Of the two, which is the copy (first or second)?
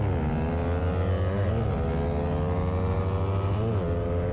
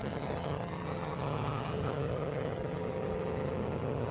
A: second